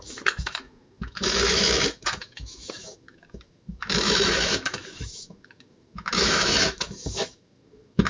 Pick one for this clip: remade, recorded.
remade